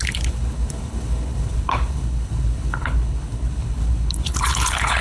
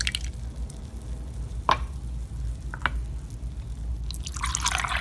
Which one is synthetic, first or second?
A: first